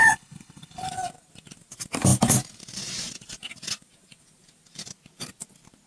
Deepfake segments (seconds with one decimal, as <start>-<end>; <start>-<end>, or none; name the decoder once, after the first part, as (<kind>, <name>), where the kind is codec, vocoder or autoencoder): 0.0-0.9 (codec, HILCodec)